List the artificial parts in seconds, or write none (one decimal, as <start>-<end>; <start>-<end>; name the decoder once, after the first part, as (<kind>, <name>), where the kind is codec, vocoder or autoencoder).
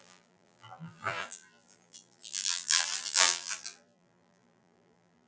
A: 0.0-5.3 (vocoder, BigVGAN v2)